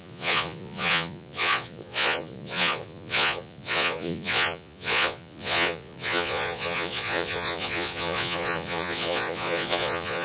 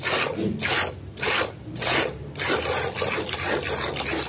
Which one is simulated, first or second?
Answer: first